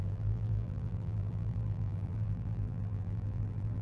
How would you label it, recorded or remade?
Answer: remade